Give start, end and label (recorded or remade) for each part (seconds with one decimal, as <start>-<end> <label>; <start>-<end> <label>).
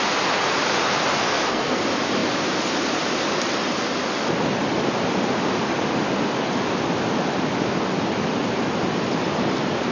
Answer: 0.0-1.2 recorded; 1.2-1.8 remade; 1.8-9.9 recorded